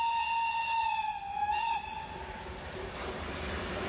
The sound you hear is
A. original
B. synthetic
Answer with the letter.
A